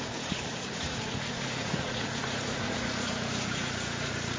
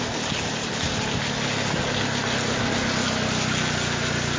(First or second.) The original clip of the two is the second